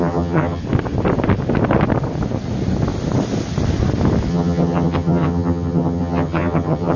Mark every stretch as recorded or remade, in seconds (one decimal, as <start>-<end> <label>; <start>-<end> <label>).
0.0-0.6 remade; 0.6-4.3 recorded; 4.3-7.0 remade